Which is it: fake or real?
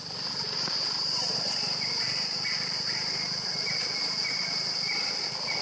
real